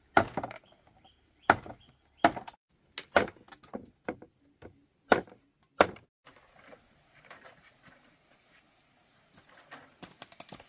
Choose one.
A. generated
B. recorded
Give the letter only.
B